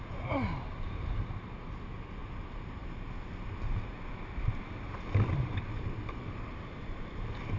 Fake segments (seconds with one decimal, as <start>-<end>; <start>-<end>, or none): none